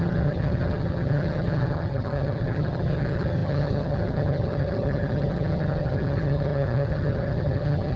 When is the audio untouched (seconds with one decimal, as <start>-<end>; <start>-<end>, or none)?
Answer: none